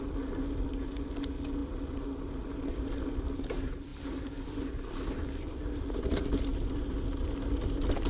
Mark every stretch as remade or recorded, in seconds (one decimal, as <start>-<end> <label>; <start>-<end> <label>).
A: 0.0-3.9 recorded; 3.9-5.6 remade; 5.6-8.1 recorded